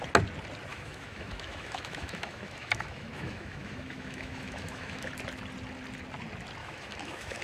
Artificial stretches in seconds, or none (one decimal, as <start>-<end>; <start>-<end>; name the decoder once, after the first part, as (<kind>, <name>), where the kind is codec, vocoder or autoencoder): 0.7-5.1 (autoencoder, DAC-VAE); 6.6-7.4